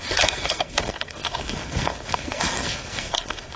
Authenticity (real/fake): fake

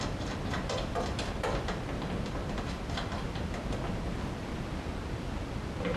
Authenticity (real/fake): real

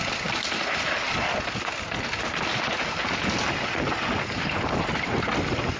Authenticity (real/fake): real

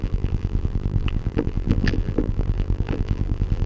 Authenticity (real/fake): fake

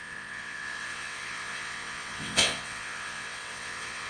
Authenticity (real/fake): fake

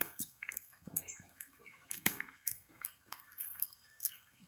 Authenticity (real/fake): fake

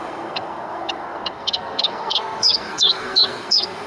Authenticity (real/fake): fake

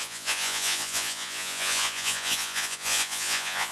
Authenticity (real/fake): fake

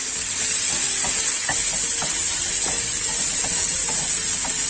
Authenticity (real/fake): real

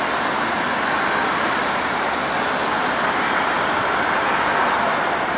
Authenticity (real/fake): real